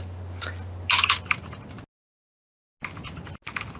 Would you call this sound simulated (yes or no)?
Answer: no